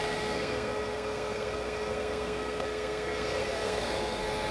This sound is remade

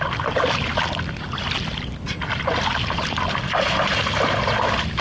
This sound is recorded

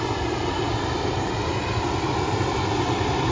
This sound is recorded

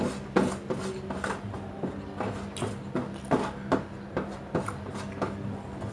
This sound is recorded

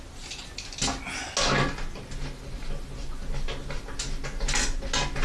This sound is recorded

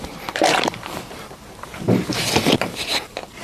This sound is remade